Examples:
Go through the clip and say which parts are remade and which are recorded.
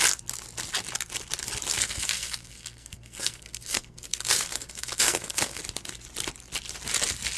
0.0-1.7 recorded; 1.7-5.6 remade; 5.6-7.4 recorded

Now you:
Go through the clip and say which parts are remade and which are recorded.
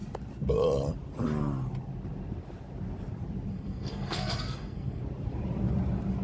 0.0-3.5 recorded; 3.5-5.0 remade; 5.0-6.2 recorded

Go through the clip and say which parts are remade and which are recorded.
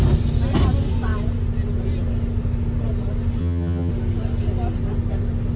0.0-3.4 recorded; 3.4-3.9 remade; 3.9-5.6 recorded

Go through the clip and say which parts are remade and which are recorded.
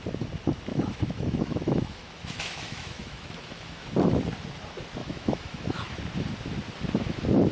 0.0-0.7 recorded; 0.7-3.9 remade; 3.9-5.0 recorded; 5.0-6.0 remade; 6.0-7.5 recorded